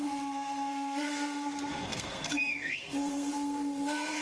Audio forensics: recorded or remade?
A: remade